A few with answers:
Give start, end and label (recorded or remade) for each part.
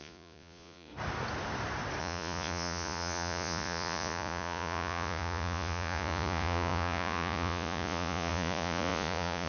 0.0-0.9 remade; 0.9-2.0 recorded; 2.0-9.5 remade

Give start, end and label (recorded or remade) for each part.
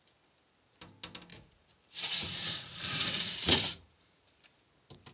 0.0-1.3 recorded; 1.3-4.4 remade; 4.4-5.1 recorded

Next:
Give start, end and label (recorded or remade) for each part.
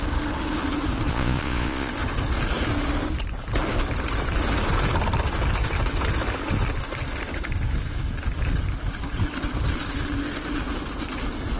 0.0-1.1 recorded; 1.1-1.9 remade; 1.9-11.6 recorded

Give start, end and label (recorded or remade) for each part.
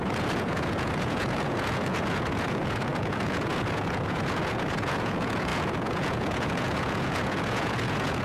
0.0-8.2 remade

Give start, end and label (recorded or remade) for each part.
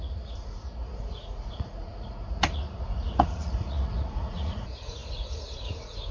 0.0-6.1 remade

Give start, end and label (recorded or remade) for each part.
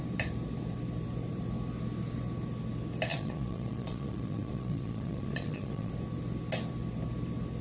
0.0-3.1 recorded; 3.1-5.9 remade; 5.9-7.6 recorded